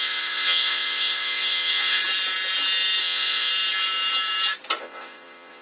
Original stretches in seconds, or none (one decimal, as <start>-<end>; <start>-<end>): 2.0-3.0; 3.5-4.8